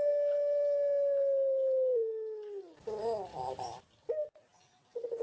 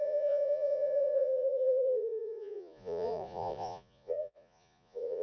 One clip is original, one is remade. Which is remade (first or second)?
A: second